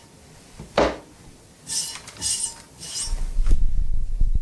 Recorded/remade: recorded